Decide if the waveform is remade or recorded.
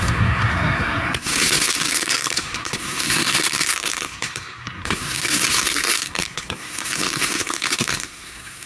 remade